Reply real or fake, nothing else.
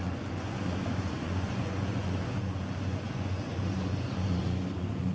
fake